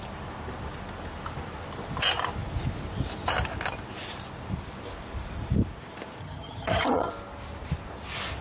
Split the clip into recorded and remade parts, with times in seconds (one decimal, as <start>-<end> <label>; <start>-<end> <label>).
0.0-6.2 recorded; 6.2-7.1 remade; 7.1-8.4 recorded